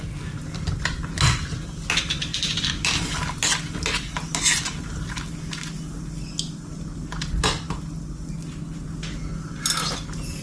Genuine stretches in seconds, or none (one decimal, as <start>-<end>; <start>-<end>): 0.0-10.4